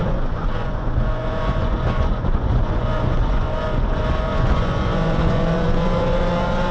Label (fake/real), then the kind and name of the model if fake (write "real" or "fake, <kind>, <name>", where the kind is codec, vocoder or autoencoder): fake, vocoder, Vocos